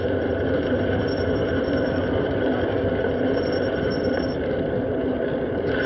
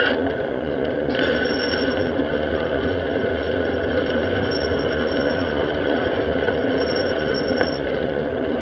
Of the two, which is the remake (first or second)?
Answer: second